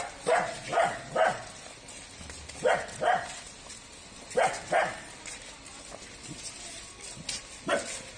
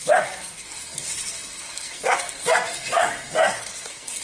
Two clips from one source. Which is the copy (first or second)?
second